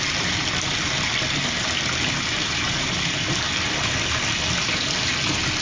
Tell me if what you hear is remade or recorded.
recorded